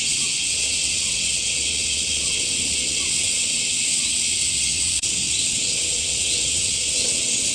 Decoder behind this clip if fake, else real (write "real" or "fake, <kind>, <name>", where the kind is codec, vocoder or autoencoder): fake, vocoder, WaveNeXt